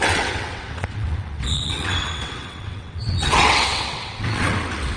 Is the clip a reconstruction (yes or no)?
yes